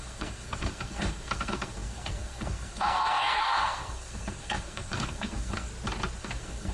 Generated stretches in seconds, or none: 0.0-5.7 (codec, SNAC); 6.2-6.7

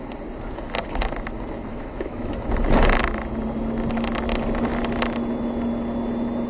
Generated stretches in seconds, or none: 1.7-2.3 (autoencoder, DAC-VAE)

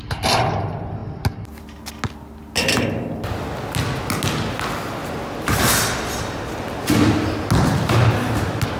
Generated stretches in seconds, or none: none